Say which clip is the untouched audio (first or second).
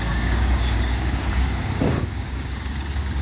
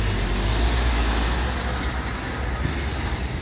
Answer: second